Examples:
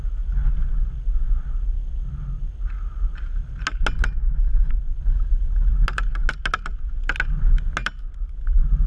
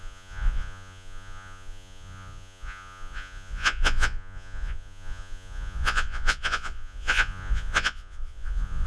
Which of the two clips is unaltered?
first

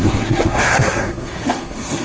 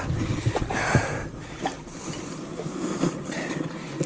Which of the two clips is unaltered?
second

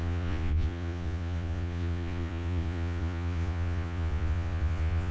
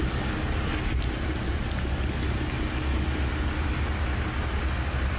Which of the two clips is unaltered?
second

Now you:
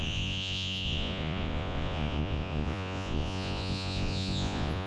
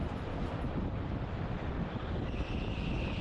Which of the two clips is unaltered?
second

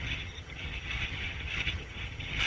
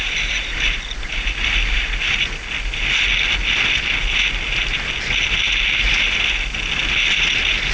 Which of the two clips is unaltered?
second